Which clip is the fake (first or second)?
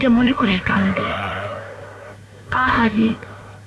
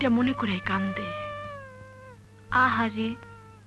first